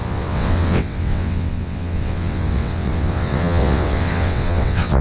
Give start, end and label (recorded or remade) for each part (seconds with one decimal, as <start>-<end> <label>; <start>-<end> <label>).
0.0-5.0 remade